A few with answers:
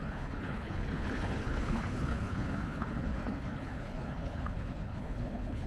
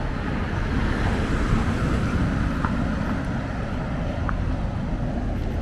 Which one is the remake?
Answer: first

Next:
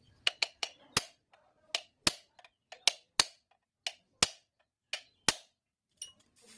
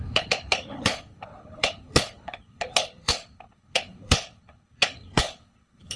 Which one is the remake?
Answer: second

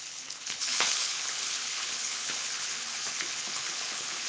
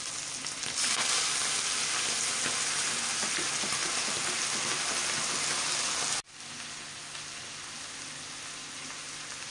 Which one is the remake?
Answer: first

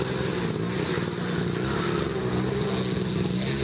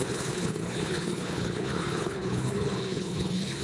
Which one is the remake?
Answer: second